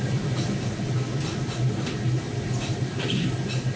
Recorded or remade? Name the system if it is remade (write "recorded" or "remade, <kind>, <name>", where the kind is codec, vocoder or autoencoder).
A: recorded